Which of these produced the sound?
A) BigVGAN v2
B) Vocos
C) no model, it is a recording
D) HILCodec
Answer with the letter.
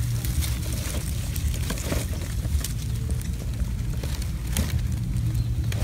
C